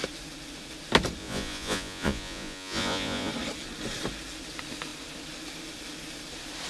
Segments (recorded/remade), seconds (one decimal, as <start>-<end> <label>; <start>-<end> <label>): 0.0-1.2 recorded; 1.2-3.3 remade; 3.3-6.7 recorded